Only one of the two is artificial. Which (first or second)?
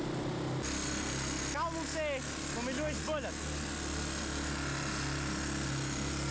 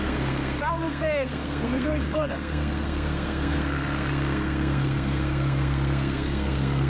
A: second